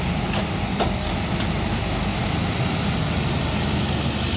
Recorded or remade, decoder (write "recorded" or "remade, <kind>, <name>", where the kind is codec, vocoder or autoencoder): recorded